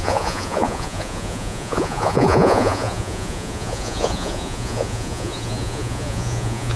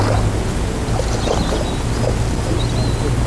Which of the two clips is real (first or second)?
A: second